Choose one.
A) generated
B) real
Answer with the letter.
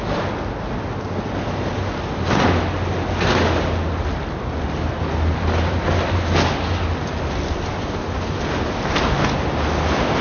B